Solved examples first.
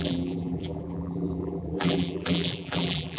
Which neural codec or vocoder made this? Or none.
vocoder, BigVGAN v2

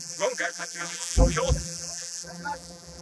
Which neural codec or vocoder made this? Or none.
vocoder, BigVGAN v2